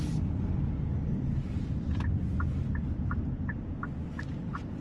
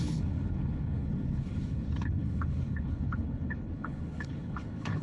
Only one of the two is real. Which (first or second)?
first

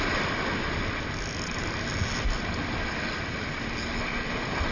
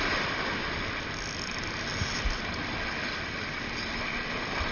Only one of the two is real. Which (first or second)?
first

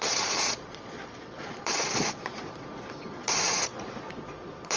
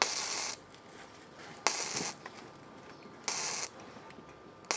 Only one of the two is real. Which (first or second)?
second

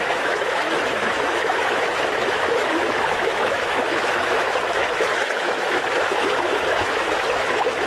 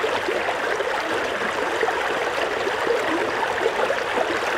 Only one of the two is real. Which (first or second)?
second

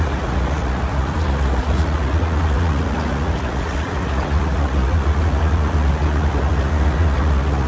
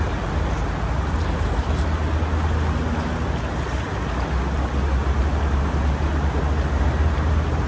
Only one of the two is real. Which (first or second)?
second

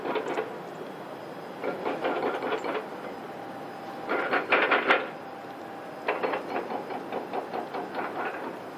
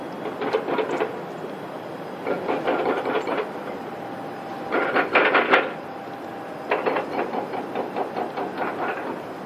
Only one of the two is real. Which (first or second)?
first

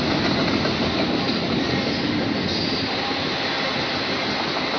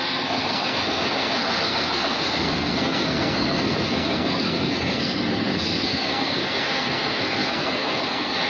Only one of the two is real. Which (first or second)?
first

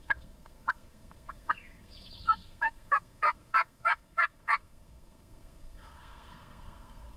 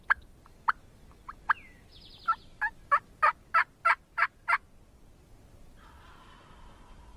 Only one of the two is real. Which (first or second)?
second